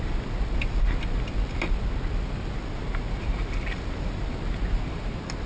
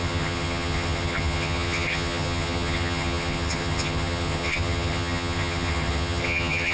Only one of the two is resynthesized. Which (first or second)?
second